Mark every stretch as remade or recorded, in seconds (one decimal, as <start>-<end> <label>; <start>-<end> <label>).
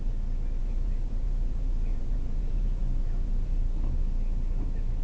0.0-0.6 recorded; 0.6-3.6 remade; 3.6-5.0 recorded